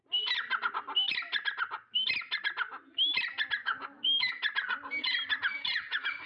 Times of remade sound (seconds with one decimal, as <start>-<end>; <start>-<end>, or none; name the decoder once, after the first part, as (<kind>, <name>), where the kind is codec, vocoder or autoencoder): 3.6-4.3 (codec, DAC)